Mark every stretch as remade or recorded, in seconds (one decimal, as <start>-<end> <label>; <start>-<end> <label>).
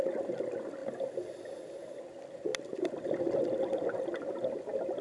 0.0-5.0 recorded